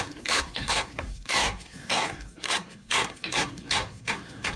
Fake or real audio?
fake